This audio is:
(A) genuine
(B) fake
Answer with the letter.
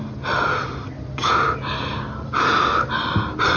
A